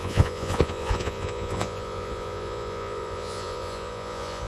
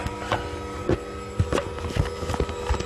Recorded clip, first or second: second